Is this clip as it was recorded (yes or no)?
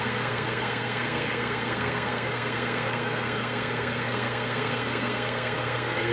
no